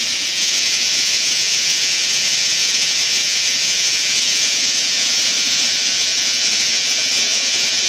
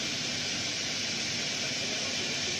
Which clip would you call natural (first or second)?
second